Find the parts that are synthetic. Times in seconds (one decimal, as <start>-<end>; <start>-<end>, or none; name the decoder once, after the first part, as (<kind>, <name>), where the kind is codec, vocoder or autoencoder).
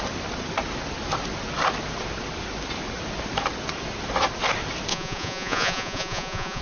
4.9-6.6 (vocoder, Vocos)